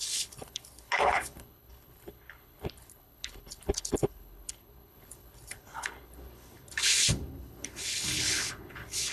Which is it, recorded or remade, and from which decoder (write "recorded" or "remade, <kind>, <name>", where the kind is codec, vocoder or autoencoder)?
remade, codec, HILCodec